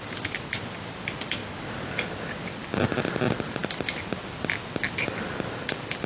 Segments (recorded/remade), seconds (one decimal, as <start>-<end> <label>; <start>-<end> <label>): 0.0-6.1 recorded